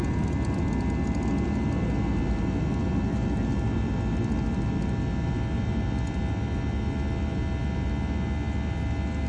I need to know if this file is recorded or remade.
recorded